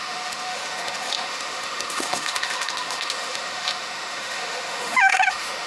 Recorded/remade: remade